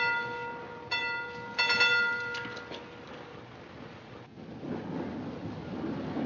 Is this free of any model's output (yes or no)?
yes